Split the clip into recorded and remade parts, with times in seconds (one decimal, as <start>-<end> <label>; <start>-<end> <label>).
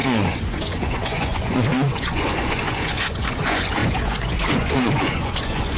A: 0.0-5.8 remade